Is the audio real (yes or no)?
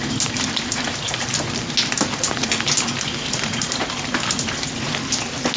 yes